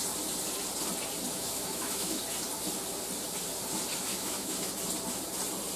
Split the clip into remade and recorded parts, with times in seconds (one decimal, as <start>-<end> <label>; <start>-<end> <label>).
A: 0.0-1.3 recorded; 1.3-2.2 remade; 2.2-4.1 recorded; 4.1-4.7 remade; 4.7-5.8 recorded